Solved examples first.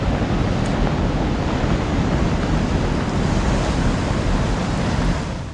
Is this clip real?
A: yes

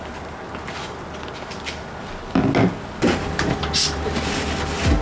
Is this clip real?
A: yes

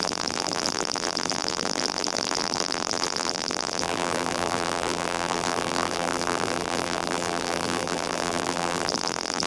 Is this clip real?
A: no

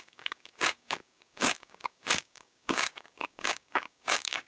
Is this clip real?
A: no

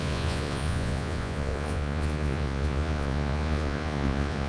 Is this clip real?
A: no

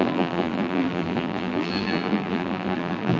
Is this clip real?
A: no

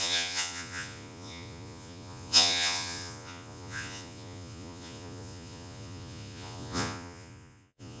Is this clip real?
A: no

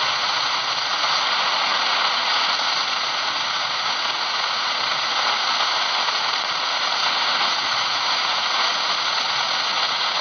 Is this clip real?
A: no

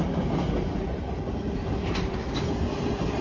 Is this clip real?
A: yes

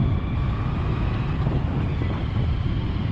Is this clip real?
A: yes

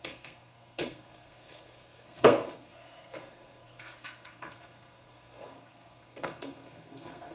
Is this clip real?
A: no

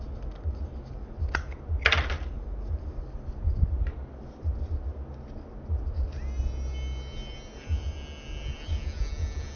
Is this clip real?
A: yes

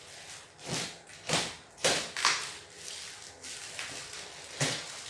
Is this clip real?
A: yes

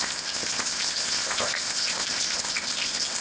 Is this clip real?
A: no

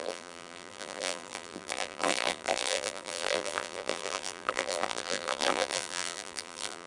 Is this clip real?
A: no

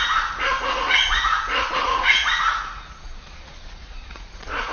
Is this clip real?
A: no